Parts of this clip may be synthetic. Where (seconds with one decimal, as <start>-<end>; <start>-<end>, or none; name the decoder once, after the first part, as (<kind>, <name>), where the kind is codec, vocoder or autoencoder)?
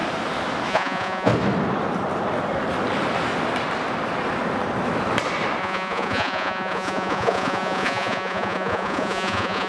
0.7-1.3 (vocoder, Vocos); 5.6-9.7